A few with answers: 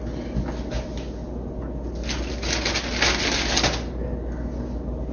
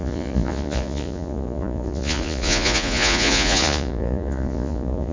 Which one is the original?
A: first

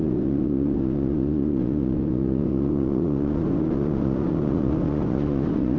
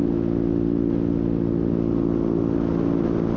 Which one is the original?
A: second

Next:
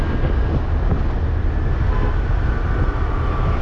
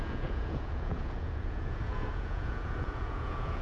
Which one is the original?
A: first